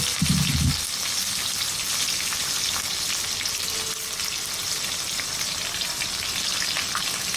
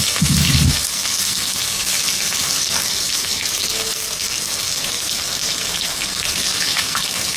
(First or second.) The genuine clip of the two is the first